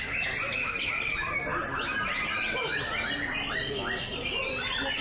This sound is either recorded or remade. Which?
recorded